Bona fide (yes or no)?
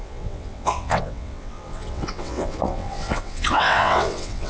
no